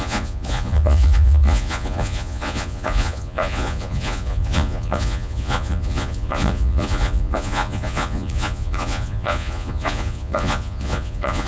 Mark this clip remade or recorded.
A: remade